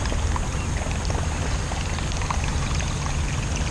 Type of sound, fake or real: real